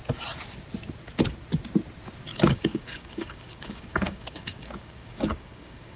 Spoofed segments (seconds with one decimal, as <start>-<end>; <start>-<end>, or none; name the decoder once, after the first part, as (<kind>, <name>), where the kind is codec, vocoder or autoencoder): 2.3-6.0 (codec, DAC)